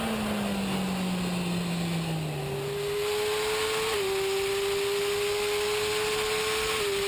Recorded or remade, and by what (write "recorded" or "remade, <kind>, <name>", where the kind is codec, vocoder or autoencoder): recorded